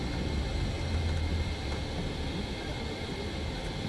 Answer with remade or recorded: recorded